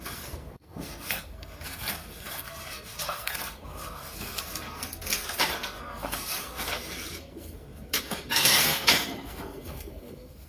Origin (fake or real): fake